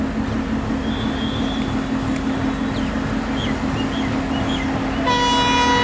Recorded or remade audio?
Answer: recorded